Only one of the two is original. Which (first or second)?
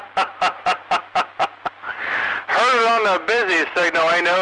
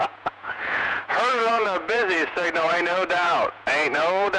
first